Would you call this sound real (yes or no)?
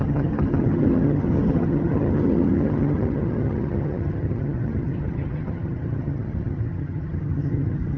no